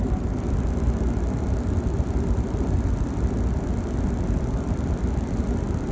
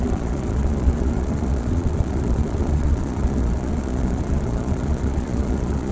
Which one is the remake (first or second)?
second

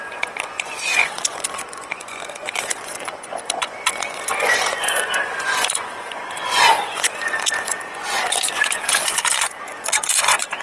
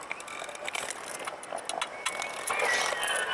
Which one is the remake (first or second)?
first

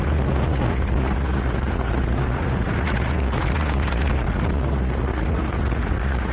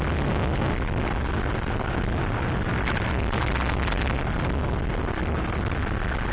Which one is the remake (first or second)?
first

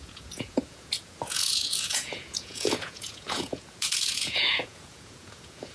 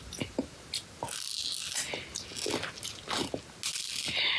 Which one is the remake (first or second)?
first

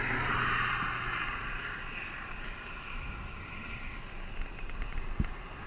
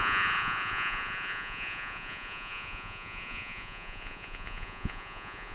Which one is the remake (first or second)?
second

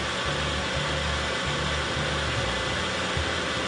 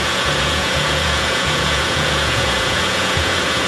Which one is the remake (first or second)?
second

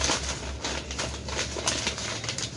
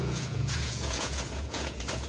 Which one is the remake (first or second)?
second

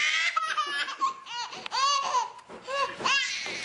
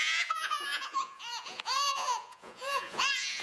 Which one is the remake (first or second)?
second